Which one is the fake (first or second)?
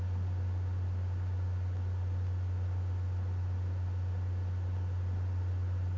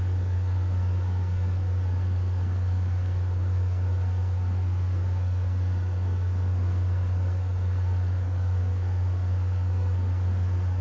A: second